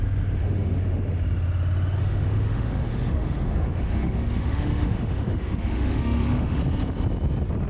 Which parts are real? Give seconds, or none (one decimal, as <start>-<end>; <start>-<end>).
0.0-0.4; 1.0-2.0; 6.6-7.7